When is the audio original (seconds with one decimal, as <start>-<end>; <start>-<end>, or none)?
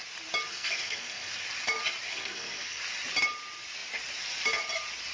0.0-0.5; 1.3-2.1; 2.8-5.1